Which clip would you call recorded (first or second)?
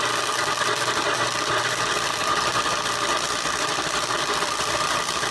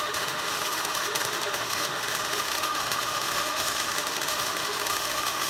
first